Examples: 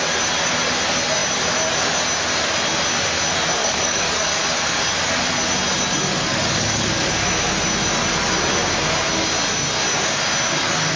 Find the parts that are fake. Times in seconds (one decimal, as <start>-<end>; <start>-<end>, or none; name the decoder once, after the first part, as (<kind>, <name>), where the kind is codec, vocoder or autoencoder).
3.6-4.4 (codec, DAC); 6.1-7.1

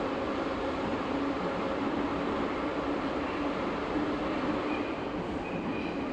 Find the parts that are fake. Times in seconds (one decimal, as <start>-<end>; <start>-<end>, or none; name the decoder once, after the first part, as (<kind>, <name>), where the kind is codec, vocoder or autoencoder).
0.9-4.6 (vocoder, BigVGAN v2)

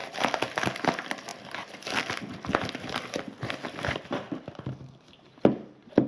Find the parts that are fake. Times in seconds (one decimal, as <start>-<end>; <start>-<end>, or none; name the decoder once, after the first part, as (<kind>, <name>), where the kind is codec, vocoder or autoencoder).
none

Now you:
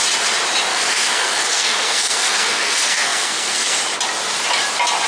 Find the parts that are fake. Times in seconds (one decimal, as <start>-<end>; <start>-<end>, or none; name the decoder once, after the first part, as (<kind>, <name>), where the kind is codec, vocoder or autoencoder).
0.7-3.8 (codec, SNAC)